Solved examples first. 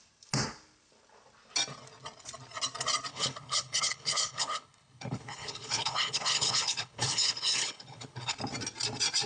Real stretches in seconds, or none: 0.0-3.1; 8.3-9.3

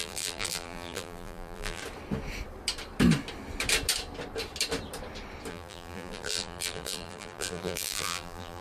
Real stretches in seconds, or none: 1.8-5.5

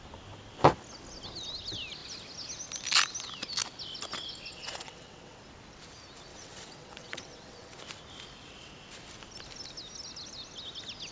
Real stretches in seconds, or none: 0.0-4.5; 5.4-6.3; 7.8-11.1

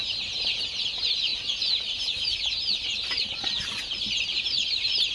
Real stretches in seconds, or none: 0.0-5.1

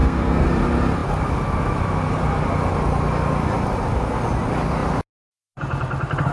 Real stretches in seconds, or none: 0.5-6.3